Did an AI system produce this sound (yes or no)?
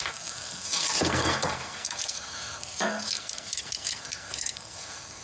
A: yes